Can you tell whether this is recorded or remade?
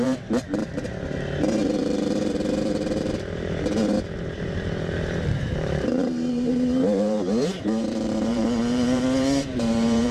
remade